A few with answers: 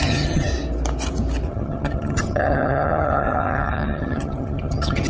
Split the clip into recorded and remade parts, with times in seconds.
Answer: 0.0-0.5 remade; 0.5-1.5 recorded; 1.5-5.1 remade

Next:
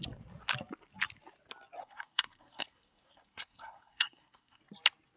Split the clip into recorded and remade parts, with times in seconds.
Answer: 0.0-1.8 recorded; 1.8-4.6 remade; 4.6-5.2 recorded

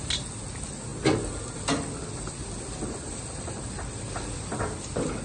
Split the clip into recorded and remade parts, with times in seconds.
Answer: 0.0-5.2 recorded

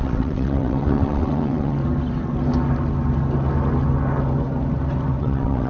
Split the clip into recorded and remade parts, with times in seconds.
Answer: 0.0-1.8 remade; 1.8-5.2 recorded; 5.2-5.7 remade

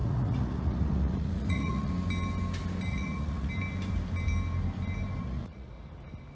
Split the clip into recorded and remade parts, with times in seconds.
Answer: 0.0-1.9 remade; 1.9-2.9 recorded; 2.9-3.5 remade; 3.5-5.2 recorded; 5.2-5.7 remade; 5.7-6.3 recorded

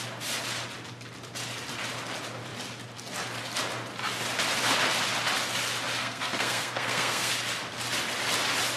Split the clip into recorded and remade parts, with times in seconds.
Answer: 0.0-6.0 recorded; 6.0-7.3 remade; 7.3-8.8 recorded